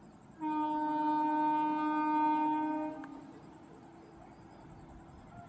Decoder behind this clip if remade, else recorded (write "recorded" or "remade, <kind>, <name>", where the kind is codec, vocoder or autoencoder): recorded